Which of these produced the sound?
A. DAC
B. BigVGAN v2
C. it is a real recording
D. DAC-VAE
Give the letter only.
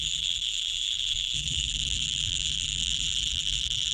B